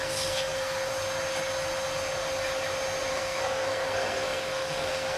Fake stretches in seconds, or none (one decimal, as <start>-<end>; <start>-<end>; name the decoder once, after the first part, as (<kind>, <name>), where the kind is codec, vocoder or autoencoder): 0.0-0.9 (codec, SNAC); 3.1-5.2